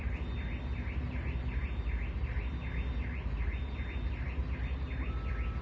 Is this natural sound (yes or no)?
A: yes